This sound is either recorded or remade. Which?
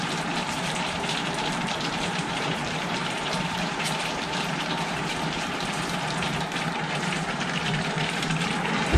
remade